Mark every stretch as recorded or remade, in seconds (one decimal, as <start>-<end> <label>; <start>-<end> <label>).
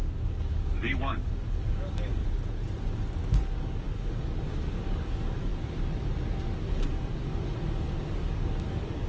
0.0-2.2 remade; 2.2-3.6 recorded; 3.6-5.5 remade; 5.5-6.7 recorded; 6.7-9.1 remade